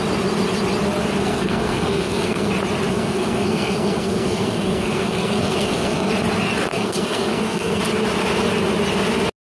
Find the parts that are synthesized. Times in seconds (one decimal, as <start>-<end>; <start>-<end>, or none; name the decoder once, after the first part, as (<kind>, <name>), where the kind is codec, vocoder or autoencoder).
1.2-2.5 (codec, SNAC); 2.9-6.1; 6.7-7.8